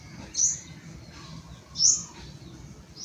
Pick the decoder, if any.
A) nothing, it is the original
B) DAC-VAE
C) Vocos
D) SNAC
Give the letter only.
A